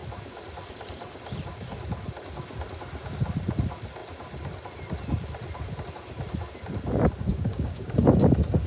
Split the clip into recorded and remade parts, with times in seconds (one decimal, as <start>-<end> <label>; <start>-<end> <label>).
0.0-7.3 recorded; 7.3-8.0 remade; 8.0-8.7 recorded